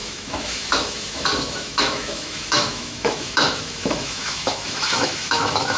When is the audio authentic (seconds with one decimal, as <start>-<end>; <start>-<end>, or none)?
none